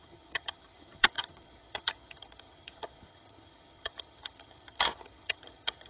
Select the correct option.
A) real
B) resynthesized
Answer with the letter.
B